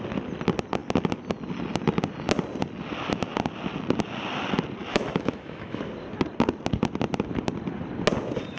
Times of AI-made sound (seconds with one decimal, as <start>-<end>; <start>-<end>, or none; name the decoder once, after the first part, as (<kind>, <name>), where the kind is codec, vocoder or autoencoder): 4.8-5.8 (autoencoder, DAC-VAE)